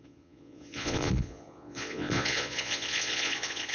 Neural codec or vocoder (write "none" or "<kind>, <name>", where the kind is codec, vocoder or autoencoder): vocoder, Vocos